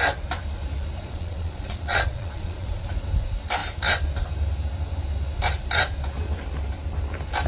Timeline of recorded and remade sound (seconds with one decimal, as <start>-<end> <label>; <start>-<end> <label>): 0.0-1.0 recorded; 1.0-2.9 remade; 2.9-7.5 recorded